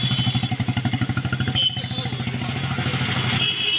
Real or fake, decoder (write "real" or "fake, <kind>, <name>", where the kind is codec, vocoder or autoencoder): real